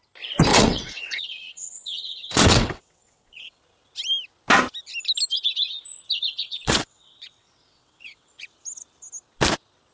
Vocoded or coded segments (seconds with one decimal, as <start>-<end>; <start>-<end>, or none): 0.5-3.6; 6.4-8.3

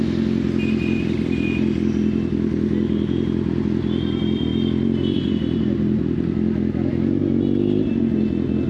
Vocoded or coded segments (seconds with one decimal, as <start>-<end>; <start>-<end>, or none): none

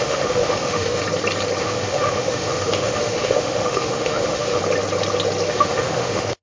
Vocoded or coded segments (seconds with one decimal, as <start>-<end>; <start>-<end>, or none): 0.0-1.0; 1.6-4.6; 5.5-6.4

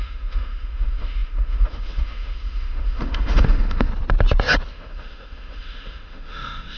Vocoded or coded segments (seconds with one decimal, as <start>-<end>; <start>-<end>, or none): 0.0-3.9; 4.7-6.8